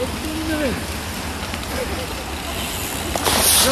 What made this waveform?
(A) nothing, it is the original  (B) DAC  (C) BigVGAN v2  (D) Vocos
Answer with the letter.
A